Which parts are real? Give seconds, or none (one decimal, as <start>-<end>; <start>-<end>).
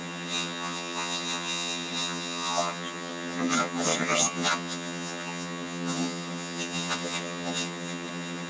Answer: none